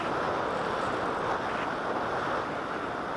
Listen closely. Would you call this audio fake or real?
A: real